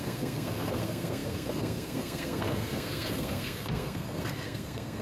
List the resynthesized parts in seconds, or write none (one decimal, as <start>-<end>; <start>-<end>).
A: 0.0-5.0